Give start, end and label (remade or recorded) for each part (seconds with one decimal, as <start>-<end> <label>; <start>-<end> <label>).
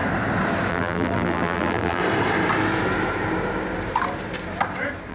0.0-0.7 recorded; 0.7-2.0 remade; 2.0-5.1 recorded